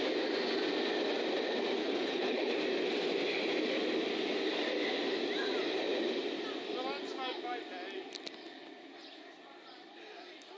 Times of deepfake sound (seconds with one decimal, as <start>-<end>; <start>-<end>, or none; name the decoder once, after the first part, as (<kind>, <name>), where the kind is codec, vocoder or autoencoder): 1.8-2.5 (codec, HILCodec)

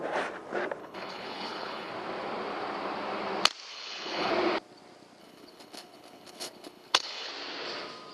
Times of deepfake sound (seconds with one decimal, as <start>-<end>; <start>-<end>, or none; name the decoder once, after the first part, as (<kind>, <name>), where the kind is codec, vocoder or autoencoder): 0.8-1.9 (codec, HILCodec); 3.7-4.3; 5.2-7.3

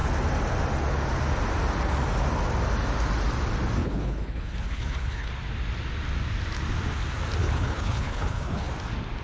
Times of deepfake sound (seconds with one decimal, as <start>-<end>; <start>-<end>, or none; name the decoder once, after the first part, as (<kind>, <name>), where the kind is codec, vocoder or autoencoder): 3.8-5.3 (codec, HILCodec); 7.4-8.7

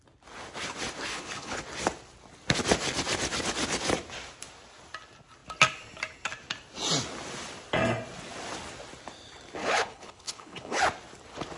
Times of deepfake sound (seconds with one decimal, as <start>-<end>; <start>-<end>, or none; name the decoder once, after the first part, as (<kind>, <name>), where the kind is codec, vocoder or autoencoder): 1.1-1.6 (codec, HILCodec); 9.6-10.8